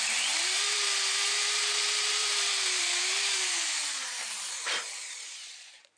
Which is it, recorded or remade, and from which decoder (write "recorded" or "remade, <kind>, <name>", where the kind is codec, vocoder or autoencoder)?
remade, vocoder, BigVGAN v2